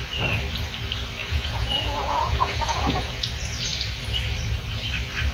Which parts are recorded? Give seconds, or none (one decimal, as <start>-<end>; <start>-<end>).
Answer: 0.0-1.2; 3.3-5.3